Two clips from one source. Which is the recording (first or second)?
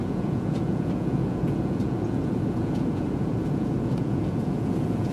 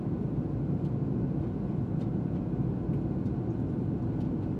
second